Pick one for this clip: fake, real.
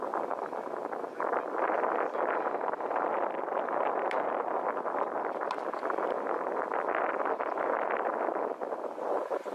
real